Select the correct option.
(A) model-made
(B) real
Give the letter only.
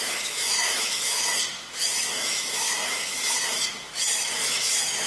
A